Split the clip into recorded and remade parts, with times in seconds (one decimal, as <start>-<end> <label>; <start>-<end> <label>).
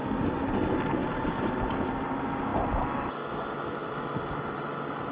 0.0-1.0 recorded; 1.0-1.5 remade; 1.5-3.8 recorded; 3.8-5.1 remade